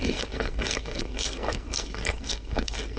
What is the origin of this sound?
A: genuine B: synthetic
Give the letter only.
B